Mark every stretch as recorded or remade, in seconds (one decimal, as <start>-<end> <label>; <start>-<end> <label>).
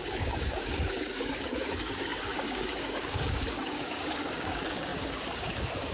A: 0.0-5.9 remade